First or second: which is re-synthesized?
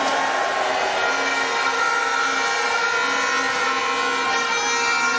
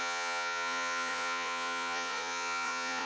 second